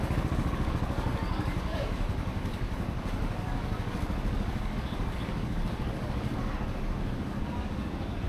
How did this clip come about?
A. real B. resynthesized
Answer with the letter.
B